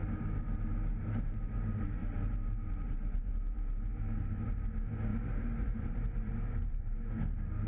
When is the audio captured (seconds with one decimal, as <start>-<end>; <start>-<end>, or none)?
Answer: 3.3-5.1; 7.1-7.7